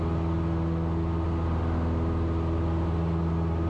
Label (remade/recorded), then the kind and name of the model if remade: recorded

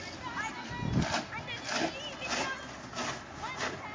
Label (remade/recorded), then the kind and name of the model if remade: recorded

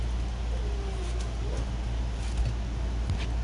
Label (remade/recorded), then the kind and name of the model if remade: recorded